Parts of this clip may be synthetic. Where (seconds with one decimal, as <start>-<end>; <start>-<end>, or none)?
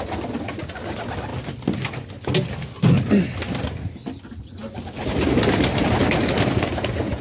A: none